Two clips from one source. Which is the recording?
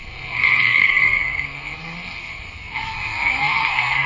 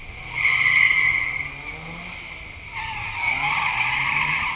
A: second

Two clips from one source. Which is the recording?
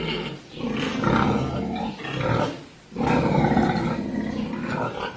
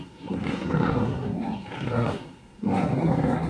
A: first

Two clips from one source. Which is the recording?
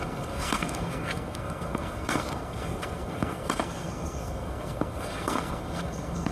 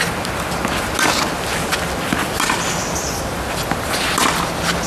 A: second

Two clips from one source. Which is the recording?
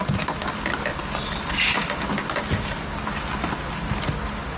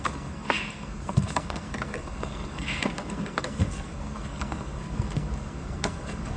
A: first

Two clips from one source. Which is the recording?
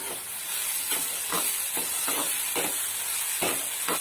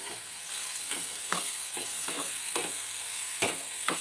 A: first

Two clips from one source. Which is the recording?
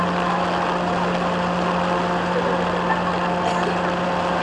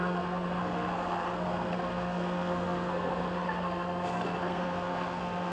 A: first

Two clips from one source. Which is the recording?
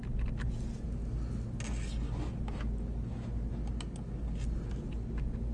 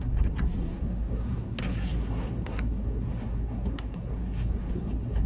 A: first